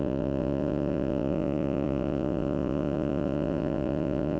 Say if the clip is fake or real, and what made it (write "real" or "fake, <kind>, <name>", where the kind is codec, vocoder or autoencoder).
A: fake, vocoder, Vocos